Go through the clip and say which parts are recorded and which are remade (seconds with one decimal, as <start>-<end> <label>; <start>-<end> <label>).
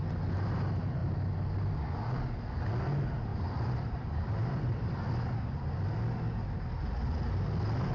0.0-3.3 recorded; 3.3-5.1 remade; 5.1-7.9 recorded